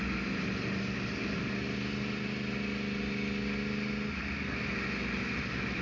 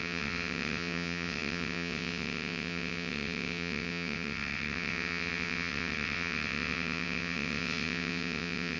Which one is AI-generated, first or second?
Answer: second